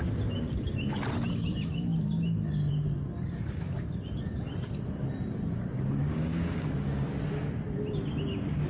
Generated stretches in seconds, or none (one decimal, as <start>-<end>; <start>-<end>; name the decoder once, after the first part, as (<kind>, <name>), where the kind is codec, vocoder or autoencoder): 6.0-7.1 (codec, DAC)

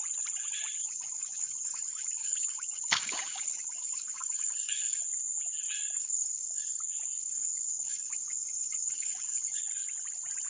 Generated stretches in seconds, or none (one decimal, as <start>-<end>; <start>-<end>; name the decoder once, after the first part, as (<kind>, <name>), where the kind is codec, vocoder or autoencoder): 0.8-5.0 (codec, DAC); 6.0-6.8; 7.2-9.6

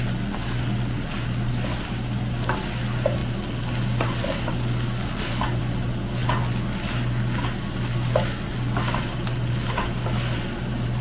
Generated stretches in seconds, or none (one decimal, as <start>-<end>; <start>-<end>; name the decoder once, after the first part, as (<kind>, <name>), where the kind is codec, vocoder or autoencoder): none

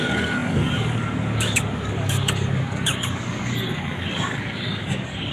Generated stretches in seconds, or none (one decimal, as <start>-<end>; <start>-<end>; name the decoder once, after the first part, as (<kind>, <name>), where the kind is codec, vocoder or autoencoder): 0.0-5.3 (codec, DAC)

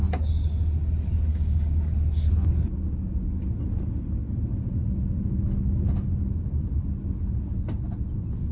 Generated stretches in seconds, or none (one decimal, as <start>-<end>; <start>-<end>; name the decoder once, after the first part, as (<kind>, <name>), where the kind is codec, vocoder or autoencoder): 1.3-1.9 (codec, DAC)

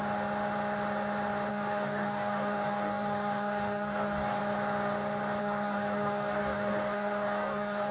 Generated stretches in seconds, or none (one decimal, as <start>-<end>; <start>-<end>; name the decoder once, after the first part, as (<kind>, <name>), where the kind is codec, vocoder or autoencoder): 1.5-4.4 (codec, DAC); 5.4-7.9

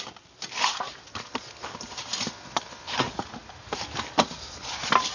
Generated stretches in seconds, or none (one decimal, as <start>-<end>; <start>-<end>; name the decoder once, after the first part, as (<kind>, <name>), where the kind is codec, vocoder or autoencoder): none